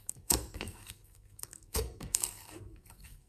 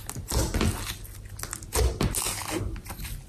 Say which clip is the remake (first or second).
first